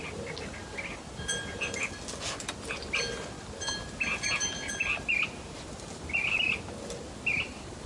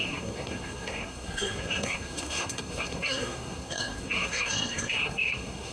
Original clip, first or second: first